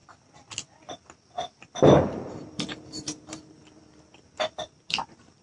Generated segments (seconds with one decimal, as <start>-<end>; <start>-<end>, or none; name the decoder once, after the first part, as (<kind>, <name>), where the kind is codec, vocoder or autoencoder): 2.3-3.6 (vocoder, BigVGAN v2); 4.6-5.4